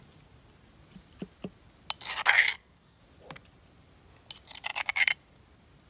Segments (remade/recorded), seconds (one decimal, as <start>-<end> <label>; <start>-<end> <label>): 0.0-2.5 recorded; 2.5-3.0 remade; 3.0-5.9 recorded